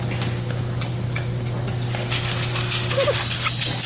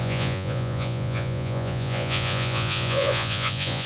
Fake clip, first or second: second